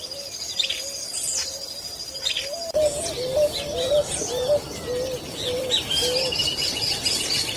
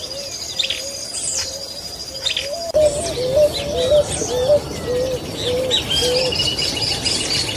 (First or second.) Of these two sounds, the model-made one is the first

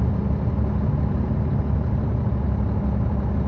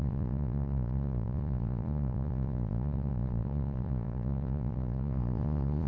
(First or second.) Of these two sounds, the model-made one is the second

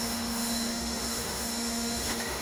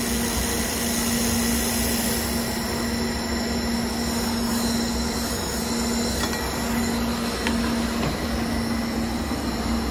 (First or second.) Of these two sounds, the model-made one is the first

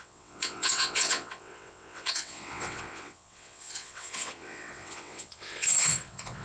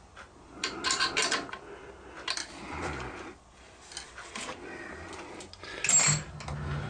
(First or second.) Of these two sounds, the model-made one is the first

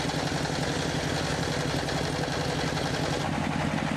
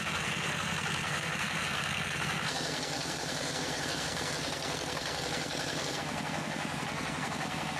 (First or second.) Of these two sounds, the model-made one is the second